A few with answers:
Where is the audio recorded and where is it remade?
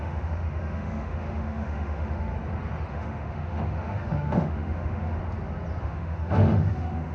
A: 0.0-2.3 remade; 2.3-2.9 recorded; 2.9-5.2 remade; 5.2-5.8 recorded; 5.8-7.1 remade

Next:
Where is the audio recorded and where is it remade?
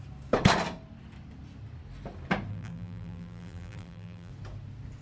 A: 0.0-2.5 recorded; 2.5-4.3 remade; 4.3-5.0 recorded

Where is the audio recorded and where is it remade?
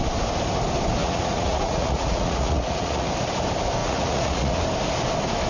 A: 0.0-1.0 recorded; 1.0-3.1 remade; 3.1-3.8 recorded; 3.8-4.6 remade; 4.6-5.5 recorded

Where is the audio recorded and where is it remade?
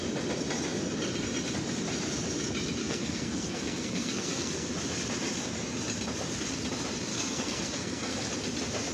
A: 0.0-2.8 recorded; 2.8-4.7 remade; 4.7-7.1 recorded; 7.1-8.3 remade; 8.3-8.9 recorded